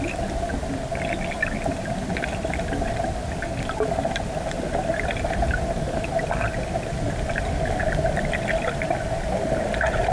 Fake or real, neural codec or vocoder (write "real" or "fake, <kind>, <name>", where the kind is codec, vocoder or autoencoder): real